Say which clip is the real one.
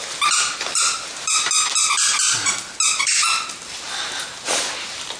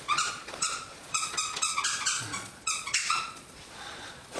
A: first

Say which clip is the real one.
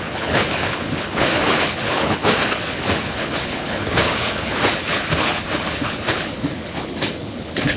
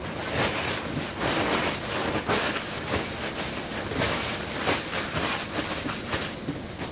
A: second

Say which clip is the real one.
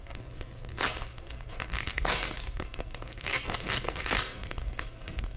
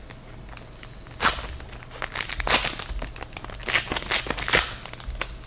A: second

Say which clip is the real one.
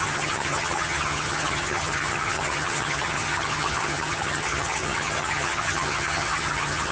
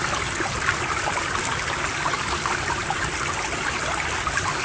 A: second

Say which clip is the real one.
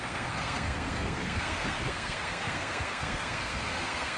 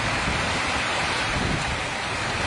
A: second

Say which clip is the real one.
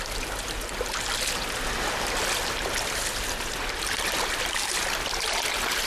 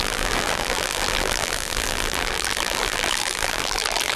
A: first